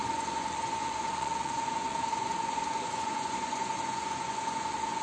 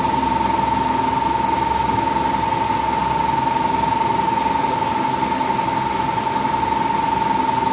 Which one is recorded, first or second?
second